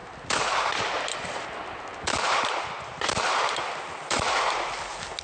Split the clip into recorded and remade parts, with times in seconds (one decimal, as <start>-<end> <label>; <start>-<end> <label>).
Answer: 0.0-5.2 recorded